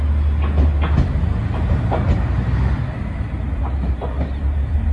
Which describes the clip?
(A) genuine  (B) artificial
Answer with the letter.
A